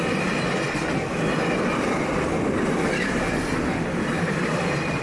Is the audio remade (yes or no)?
no